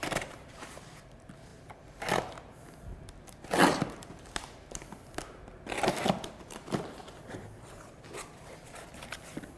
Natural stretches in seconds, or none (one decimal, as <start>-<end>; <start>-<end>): 1.5-2.6